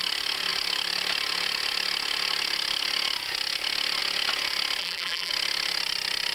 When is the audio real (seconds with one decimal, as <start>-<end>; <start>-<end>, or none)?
0.0-4.8; 5.3-6.3